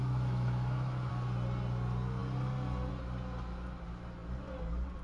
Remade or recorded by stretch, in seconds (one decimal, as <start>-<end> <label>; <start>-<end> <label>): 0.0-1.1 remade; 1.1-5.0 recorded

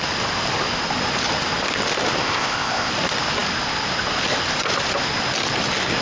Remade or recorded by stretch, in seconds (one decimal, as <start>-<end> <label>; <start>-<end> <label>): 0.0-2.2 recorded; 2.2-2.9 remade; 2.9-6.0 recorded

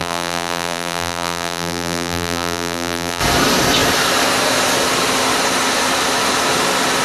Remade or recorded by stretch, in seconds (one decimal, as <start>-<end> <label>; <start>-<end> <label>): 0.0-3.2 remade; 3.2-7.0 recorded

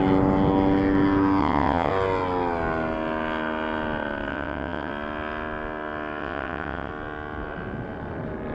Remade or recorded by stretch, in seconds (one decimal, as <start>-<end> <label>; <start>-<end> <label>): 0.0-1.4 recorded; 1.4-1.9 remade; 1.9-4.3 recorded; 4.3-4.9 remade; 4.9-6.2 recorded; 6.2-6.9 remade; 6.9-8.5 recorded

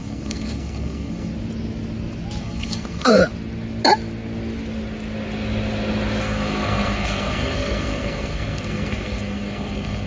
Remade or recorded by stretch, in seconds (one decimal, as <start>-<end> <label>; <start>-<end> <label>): 0.0-1.3 remade; 1.3-2.4 recorded; 2.4-3.2 remade; 3.2-6.2 recorded; 6.2-10.1 remade

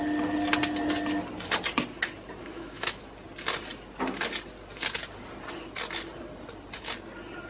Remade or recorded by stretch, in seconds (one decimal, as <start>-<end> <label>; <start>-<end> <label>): 0.0-2.4 recorded; 2.4-3.0 remade; 3.0-7.5 recorded

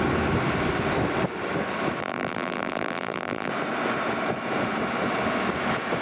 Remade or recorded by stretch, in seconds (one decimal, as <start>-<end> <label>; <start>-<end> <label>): 0.0-2.0 recorded; 2.0-3.5 remade; 3.5-6.0 recorded

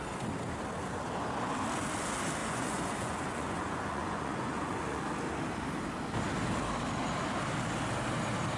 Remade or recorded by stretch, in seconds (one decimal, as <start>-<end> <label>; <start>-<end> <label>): 0.0-2.4 recorded; 2.4-5.0 remade; 5.0-8.6 recorded